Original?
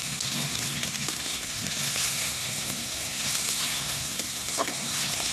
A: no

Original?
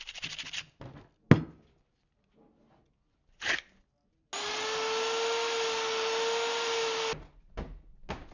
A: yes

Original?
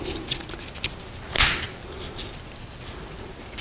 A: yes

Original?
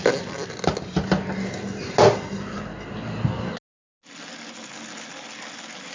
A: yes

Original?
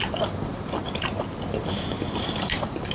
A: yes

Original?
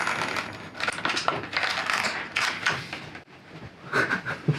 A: yes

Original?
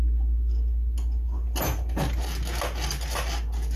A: yes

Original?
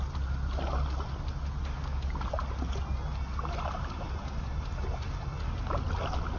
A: yes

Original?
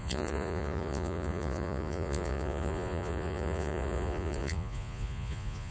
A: no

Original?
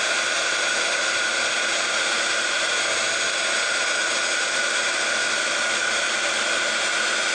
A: yes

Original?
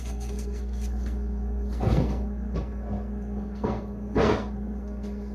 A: no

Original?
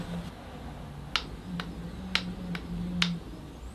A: yes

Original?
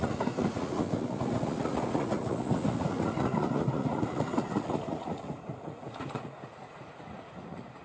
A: no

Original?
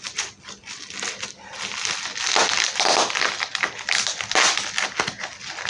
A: yes